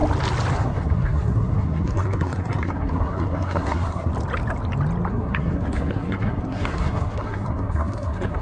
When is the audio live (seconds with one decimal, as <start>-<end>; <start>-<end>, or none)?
0.0-0.5; 4.1-5.1